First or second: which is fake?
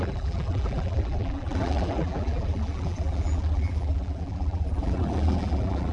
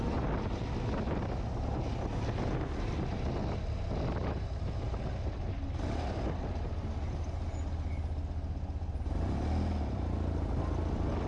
first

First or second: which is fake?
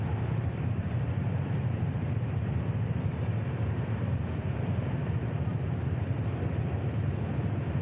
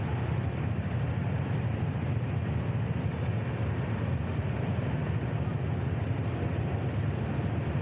first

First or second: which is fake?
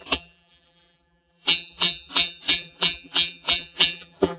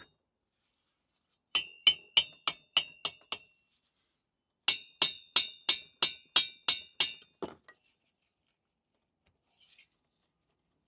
first